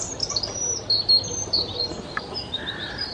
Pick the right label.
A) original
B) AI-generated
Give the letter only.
B